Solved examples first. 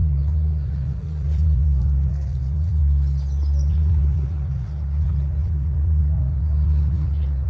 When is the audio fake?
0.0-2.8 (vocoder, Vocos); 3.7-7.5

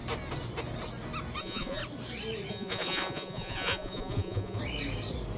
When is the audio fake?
1.4-1.8 (vocoder, Vocos); 2.5-4.6

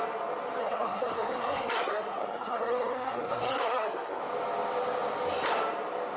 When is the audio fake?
0.6-4.2 (codec, SNAC)